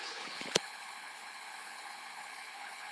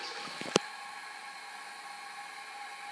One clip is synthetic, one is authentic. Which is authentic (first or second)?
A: second